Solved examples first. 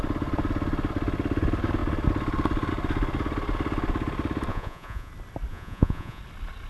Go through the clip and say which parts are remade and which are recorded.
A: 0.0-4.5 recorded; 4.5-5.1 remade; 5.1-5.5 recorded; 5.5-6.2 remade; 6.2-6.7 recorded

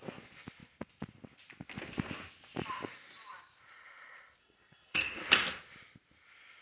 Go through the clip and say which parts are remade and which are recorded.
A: 0.0-4.4 recorded; 4.4-5.0 remade; 5.0-6.6 recorded